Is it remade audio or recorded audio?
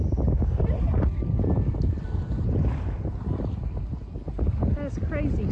recorded